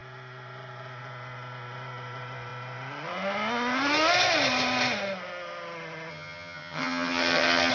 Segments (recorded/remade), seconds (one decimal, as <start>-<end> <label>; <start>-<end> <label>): 0.0-6.1 recorded; 6.1-7.7 remade